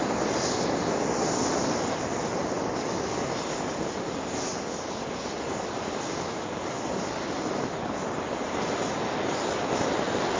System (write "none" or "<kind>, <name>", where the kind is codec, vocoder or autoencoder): none